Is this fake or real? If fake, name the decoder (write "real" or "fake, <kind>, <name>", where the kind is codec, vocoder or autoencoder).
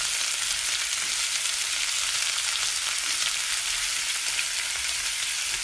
real